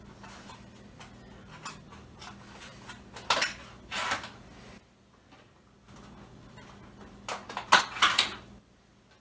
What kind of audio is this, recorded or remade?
recorded